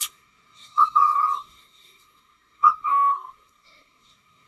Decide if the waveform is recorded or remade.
remade